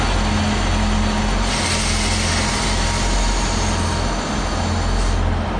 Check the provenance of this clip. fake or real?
real